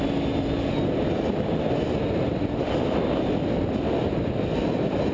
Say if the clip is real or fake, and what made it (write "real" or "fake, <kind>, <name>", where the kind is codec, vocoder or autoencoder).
real